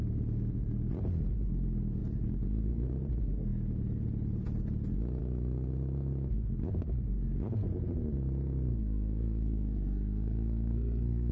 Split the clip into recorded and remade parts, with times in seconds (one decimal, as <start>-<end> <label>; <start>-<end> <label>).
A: 0.0-8.7 recorded; 8.7-11.3 remade